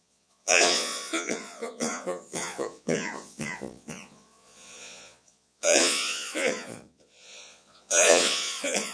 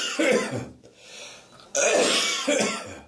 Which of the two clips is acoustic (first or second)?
second